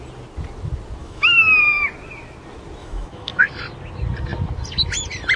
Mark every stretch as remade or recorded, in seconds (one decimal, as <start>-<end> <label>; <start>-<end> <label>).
0.0-1.0 recorded; 1.0-1.6 remade; 1.6-2.8 recorded; 2.8-3.5 remade; 3.5-5.4 recorded